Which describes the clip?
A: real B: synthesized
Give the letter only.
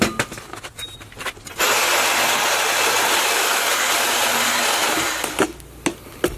A